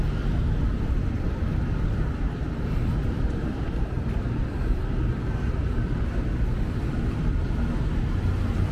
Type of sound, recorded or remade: remade